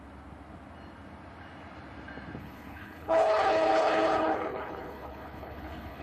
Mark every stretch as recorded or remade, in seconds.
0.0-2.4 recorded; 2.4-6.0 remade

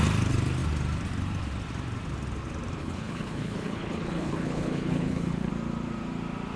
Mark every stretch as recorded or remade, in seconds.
0.0-2.8 recorded; 2.8-5.5 remade; 5.5-6.6 recorded

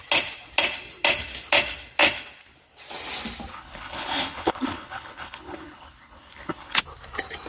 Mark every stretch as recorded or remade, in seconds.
0.0-3.5 recorded; 3.5-6.8 remade; 6.8-7.5 recorded

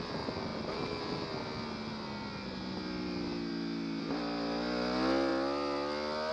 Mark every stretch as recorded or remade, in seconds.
0.0-6.3 recorded

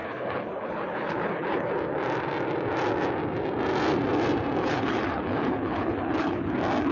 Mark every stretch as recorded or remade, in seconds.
0.0-1.7 remade; 1.7-4.6 recorded; 4.6-6.5 remade; 6.5-6.9 recorded

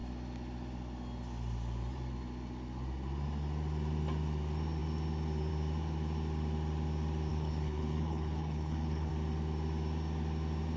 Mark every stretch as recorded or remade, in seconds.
0.0-7.3 recorded; 7.3-9.1 remade; 9.1-10.8 recorded

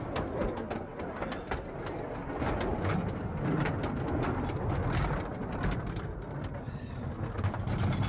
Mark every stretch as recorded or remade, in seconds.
0.0-8.1 recorded

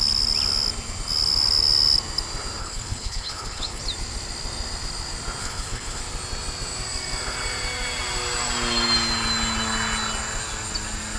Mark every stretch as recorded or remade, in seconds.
0.0-2.6 recorded; 2.6-3.8 remade; 3.8-5.4 recorded; 5.4-6.0 remade; 6.0-11.2 recorded